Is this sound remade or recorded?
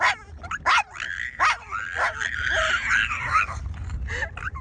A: recorded